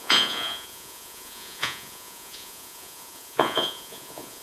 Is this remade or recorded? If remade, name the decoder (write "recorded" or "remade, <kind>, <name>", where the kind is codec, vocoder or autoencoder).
remade, vocoder, Vocos